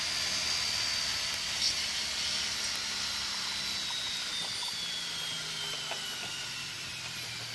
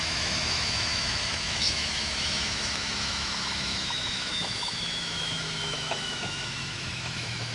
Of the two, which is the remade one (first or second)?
second